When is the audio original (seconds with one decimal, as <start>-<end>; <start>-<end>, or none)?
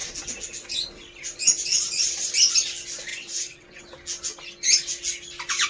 0.0-1.7; 2.3-3.1; 3.8-5.7